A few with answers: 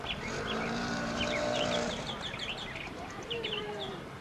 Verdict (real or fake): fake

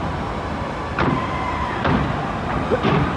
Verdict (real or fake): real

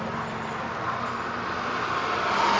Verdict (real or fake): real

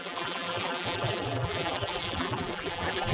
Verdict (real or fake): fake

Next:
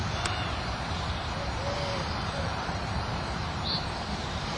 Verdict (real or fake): fake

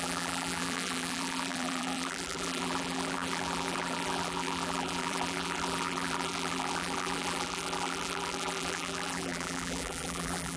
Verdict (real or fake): fake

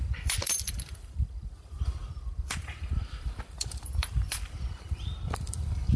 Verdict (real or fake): fake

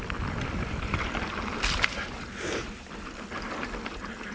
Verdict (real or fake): fake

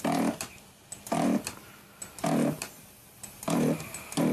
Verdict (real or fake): fake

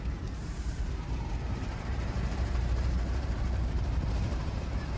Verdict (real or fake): fake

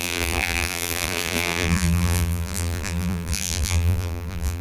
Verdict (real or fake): fake